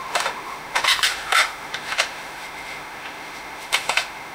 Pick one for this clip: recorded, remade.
remade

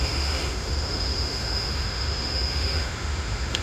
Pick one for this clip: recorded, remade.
remade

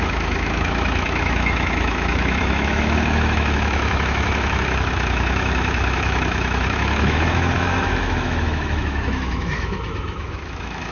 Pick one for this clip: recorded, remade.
remade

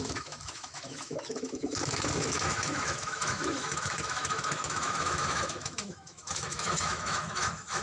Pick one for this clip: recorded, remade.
remade